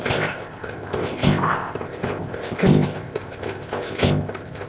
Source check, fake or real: fake